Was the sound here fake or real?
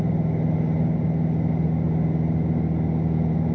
real